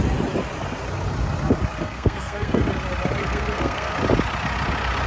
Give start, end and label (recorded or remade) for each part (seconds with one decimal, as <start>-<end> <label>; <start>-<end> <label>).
0.0-1.8 recorded; 1.8-2.6 remade; 2.6-3.2 recorded; 3.2-3.9 remade; 3.9-5.1 recorded